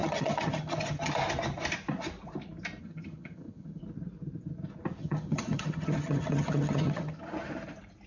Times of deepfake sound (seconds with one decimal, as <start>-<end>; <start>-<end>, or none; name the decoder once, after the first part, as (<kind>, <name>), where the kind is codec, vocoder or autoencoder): 0.0-1.1 (vocoder, HiFi-GAN); 2.8-3.8; 5.0-7.2